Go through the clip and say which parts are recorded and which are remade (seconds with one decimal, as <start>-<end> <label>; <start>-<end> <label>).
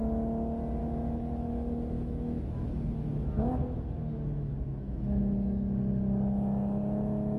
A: 0.0-0.8 recorded; 0.8-5.2 remade; 5.2-7.4 recorded